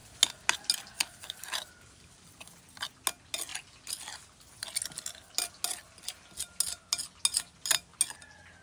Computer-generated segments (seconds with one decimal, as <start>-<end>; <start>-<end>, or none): none